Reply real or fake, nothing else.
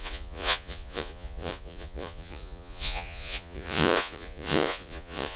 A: fake